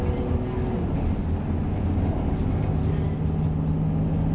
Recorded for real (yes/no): yes